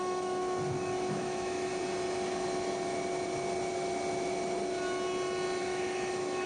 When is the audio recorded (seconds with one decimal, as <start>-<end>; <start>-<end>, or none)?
0.4-1.1; 1.7-5.6